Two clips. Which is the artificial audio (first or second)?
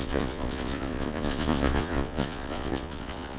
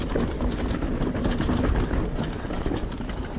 first